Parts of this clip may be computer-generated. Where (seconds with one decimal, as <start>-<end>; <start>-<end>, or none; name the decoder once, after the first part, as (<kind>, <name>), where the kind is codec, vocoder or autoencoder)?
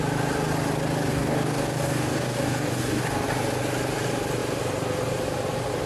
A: 1.1-3.3 (codec, DAC)